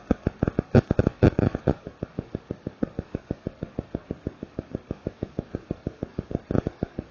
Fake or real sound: fake